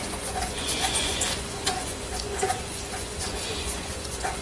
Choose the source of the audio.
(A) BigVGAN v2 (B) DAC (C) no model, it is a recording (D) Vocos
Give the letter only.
D